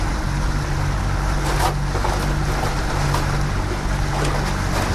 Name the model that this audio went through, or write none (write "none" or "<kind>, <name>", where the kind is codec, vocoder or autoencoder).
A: none